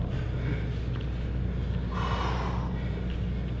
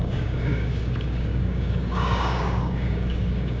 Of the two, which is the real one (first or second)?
first